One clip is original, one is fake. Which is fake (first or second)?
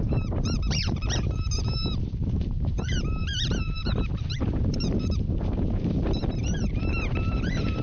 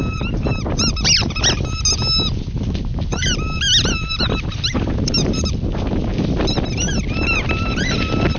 first